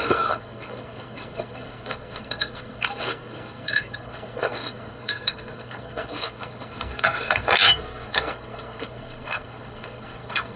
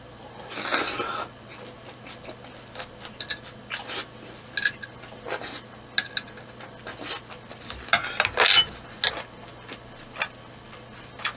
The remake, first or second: first